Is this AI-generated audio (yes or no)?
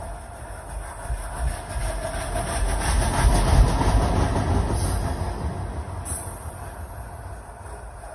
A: no